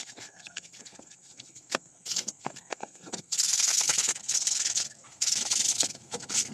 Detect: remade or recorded remade